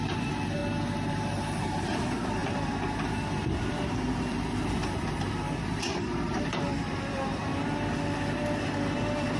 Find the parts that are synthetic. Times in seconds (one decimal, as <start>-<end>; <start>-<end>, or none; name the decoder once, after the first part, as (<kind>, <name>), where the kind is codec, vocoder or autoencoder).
0.0-0.6 (vocoder, BigVGAN v2); 1.1-7.5; 8.7-9.4